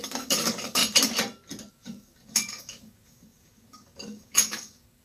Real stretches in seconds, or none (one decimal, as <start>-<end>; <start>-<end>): 0.8-1.7